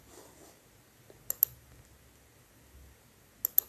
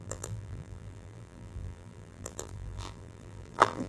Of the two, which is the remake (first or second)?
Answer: second